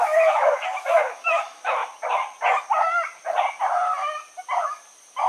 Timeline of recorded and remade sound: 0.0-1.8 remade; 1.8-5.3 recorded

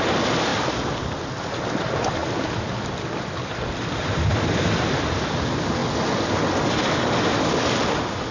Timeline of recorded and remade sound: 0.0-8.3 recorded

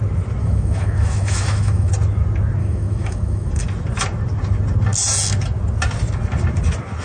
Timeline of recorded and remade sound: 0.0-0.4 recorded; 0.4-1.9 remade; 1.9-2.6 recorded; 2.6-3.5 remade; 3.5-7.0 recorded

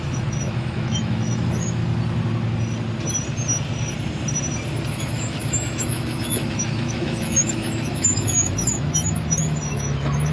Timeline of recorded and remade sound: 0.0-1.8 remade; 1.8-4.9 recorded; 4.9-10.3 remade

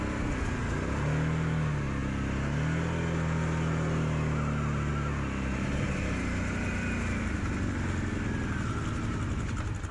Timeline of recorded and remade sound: 0.0-9.9 recorded

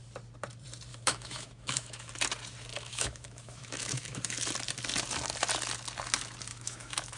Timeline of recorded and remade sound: 0.0-0.9 recorded; 0.9-2.1 remade; 2.1-2.7 recorded; 2.7-4.2 remade; 4.2-6.5 recorded; 6.5-7.2 remade